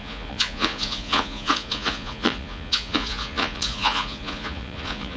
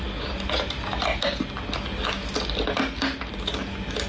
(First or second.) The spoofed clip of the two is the first